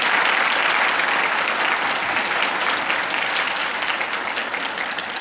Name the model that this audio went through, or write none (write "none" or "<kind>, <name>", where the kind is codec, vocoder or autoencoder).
none